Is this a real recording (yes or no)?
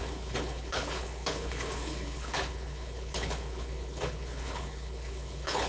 no